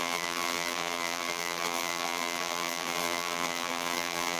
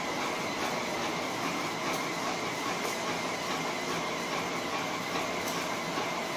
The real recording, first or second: second